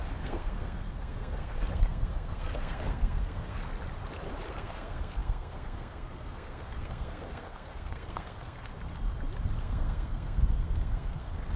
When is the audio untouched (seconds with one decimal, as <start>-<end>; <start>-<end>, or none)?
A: 3.6-4.5; 8.7-9.6